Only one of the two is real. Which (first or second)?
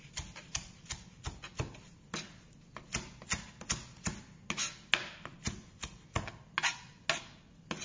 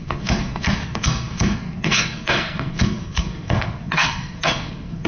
first